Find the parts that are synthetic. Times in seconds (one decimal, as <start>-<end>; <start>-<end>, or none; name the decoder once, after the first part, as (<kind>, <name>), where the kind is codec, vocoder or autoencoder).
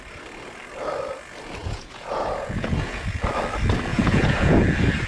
1.6-3.2 (vocoder, Vocos); 3.9-4.6